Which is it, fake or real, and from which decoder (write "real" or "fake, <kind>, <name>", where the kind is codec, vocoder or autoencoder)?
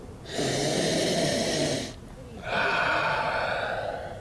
real